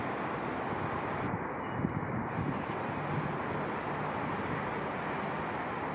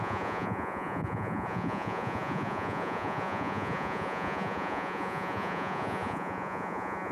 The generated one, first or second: second